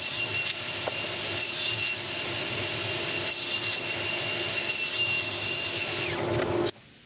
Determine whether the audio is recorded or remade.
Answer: recorded